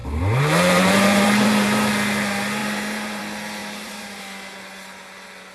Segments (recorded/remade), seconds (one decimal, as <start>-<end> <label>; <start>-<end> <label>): 0.0-1.9 remade; 1.9-2.6 recorded; 2.6-3.2 remade; 3.2-3.6 recorded; 3.6-4.2 remade; 4.2-5.5 recorded